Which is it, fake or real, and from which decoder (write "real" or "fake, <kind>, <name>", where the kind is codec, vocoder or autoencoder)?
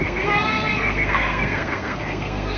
fake, codec, SNAC